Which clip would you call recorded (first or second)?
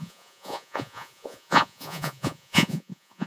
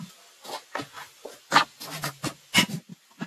second